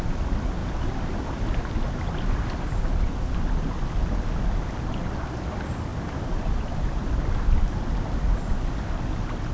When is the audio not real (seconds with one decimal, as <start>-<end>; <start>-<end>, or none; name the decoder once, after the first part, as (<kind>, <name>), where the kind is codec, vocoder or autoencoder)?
0.6-2.8 (vocoder, BigVGAN v2); 5.9-8.5